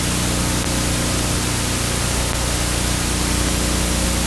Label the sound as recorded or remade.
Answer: recorded